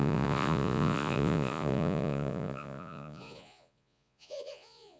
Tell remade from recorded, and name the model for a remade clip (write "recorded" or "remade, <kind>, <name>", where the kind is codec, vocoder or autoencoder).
remade, vocoder, Vocos